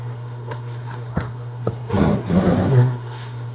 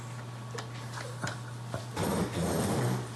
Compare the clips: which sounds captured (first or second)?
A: second